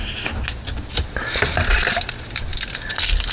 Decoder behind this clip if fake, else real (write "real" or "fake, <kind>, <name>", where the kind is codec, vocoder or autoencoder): real